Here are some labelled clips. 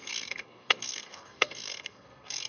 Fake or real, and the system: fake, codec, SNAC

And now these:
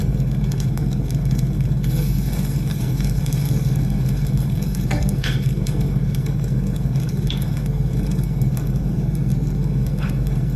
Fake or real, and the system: fake, codec, SNAC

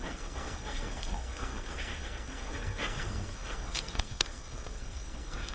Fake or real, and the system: fake, codec, SNAC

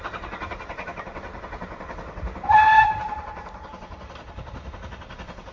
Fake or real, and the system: real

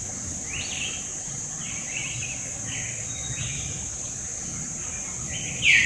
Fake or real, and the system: real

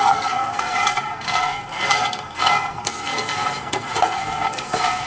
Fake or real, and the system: fake, codec, SNAC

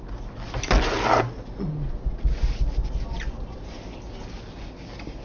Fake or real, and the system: real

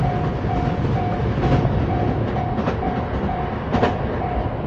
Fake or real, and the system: real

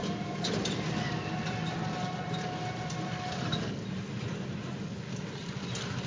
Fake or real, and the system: real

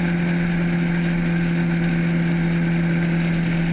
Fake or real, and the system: real